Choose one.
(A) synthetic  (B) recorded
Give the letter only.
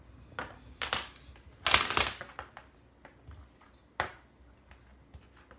B